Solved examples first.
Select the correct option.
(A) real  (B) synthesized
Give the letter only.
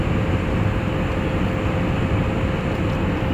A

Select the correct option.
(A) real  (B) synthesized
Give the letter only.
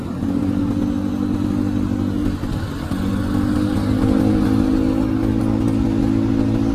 A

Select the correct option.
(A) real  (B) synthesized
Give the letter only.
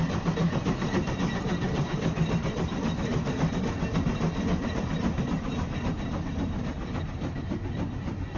A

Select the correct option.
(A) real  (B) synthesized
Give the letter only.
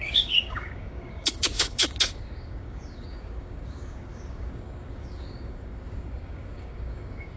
B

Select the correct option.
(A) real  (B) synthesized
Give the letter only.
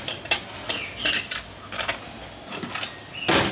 A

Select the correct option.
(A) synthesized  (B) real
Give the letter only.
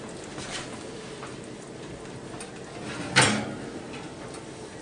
B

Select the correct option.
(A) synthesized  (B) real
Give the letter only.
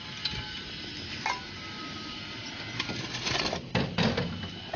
B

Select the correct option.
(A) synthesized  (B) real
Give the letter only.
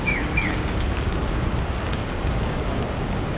A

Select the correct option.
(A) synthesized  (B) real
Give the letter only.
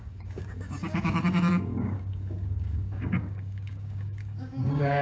A